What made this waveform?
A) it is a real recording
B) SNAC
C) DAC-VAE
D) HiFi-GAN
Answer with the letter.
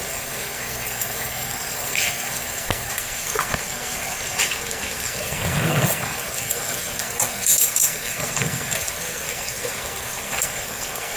B